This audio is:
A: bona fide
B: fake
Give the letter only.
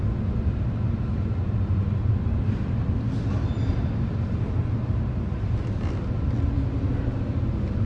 A